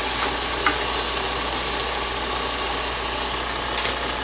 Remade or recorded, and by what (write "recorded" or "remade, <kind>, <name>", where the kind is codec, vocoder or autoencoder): recorded